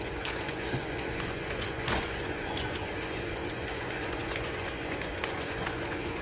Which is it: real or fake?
fake